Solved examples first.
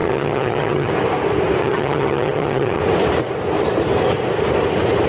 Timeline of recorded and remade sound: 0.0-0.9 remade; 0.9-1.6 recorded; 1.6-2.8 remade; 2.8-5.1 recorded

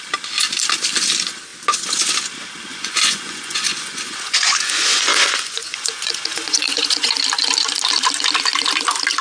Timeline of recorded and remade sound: 0.0-2.7 recorded; 2.7-7.1 remade; 7.1-9.2 recorded

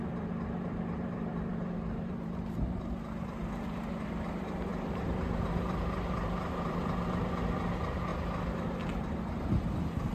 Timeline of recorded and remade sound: 0.0-8.1 remade; 8.1-8.9 recorded; 8.9-10.1 remade

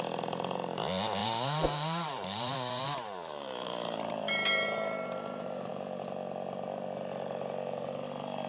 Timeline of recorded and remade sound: 0.0-1.2 recorded; 1.2-5.7 remade; 5.7-8.5 recorded

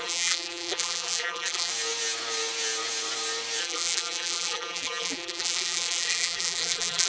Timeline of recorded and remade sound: 0.0-1.7 remade; 1.7-3.6 recorded; 3.6-7.1 remade

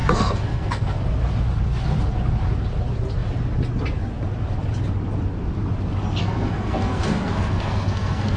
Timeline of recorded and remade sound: 0.0-1.0 remade; 1.0-6.2 recorded; 6.2-8.4 remade

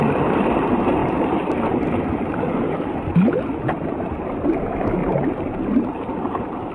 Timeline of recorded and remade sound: 0.0-1.0 recorded; 1.0-3.4 remade; 3.4-5.0 recorded; 5.0-6.7 remade

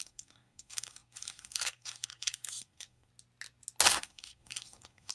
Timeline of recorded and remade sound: 0.0-3.1 remade; 3.1-3.9 recorded; 3.9-5.1 remade